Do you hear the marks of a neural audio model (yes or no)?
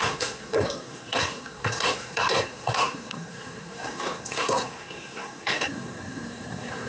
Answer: yes